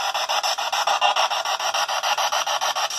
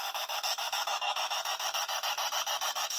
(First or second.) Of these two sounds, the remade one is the second